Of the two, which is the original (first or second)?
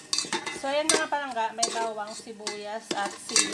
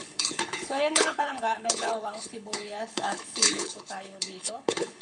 first